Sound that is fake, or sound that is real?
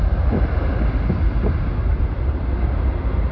real